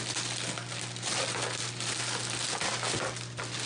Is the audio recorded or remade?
recorded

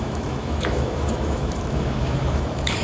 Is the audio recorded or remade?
remade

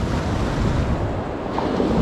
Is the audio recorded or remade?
recorded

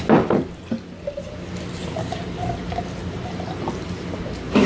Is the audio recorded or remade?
recorded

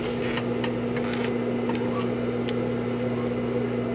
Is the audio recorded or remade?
recorded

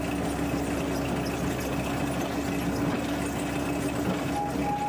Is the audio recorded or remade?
recorded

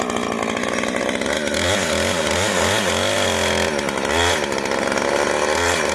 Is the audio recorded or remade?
recorded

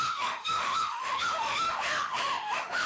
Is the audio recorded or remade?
remade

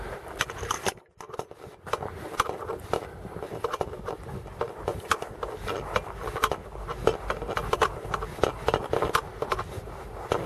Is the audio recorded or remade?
recorded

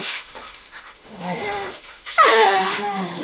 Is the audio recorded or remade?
remade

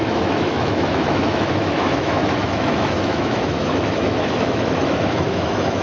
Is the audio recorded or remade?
remade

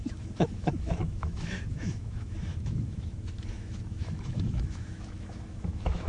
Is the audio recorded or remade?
remade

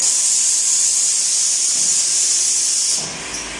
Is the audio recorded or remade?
recorded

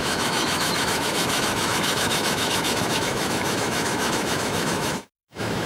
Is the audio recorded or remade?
remade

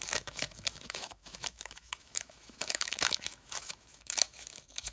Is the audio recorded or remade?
remade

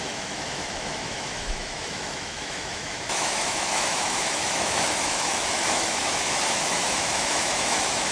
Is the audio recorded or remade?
remade